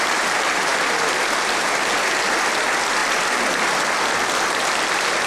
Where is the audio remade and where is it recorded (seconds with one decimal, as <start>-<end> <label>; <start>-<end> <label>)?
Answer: 0.0-5.3 recorded